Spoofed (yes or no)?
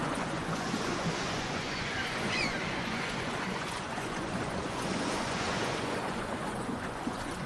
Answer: yes